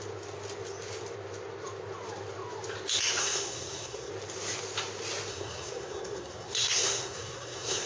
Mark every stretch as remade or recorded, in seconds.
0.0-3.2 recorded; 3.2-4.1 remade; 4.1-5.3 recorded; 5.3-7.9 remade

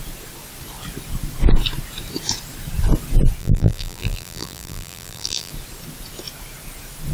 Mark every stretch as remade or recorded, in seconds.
0.0-3.4 recorded; 3.4-5.5 remade; 5.5-7.1 recorded

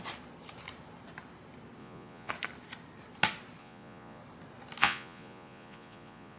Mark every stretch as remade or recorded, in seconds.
0.0-1.8 recorded; 1.8-2.3 remade; 2.3-3.6 recorded; 3.6-4.2 remade; 4.2-4.8 recorded; 4.8-6.4 remade

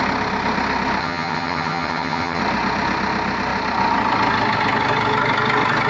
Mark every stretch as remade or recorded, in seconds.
0.0-1.0 recorded; 1.0-2.4 remade; 2.4-5.9 recorded